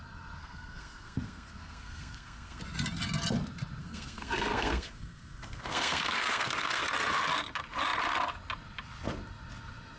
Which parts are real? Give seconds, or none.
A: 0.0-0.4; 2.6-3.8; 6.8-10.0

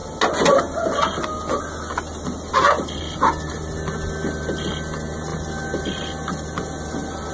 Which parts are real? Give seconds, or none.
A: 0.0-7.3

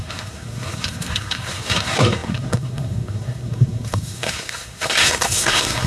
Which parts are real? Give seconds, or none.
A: none